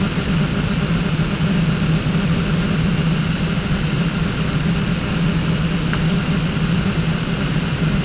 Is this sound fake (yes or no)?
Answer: yes